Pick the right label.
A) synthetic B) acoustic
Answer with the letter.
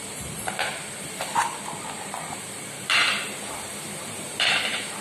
A